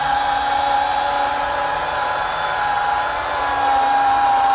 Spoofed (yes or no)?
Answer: no